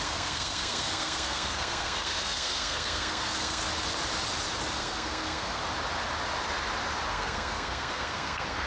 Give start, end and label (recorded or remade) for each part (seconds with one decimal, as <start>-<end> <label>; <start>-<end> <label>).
0.0-3.6 remade; 3.6-4.8 recorded; 4.8-5.6 remade; 5.6-7.1 recorded; 7.1-8.7 remade